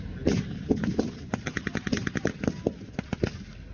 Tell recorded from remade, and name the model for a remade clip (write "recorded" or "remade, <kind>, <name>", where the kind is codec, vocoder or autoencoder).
recorded